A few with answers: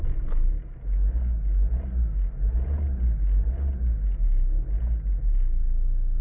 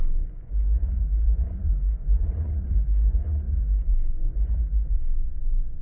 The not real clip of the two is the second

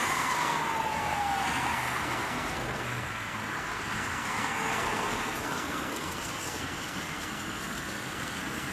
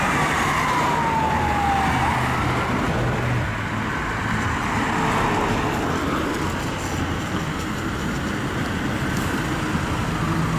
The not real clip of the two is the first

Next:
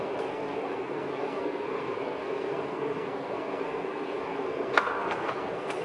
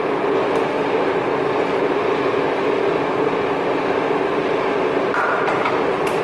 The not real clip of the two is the first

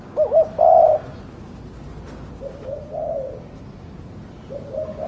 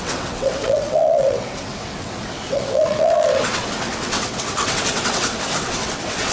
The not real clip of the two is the second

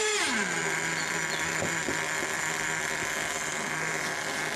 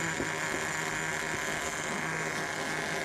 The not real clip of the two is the first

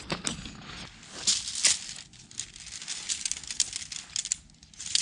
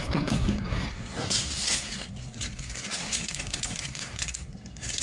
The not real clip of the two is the second